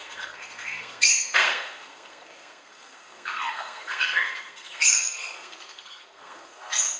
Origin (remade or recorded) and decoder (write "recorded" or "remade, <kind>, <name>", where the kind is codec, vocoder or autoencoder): remade, codec, SNAC